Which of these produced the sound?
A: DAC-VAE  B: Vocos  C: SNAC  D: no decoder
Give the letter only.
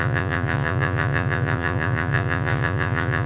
B